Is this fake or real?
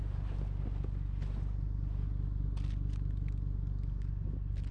real